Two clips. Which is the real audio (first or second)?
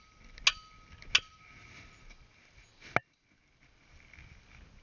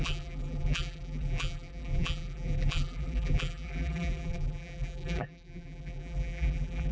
first